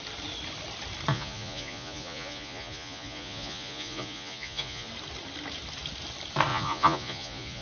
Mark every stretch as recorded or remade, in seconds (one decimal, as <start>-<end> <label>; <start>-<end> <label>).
0.0-1.1 recorded; 1.1-4.9 remade; 4.9-6.5 recorded; 6.5-7.6 remade